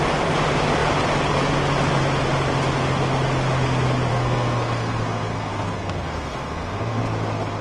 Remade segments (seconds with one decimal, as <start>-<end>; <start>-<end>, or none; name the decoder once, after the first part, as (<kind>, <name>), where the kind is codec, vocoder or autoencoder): 4.1-7.0 (codec, SNAC)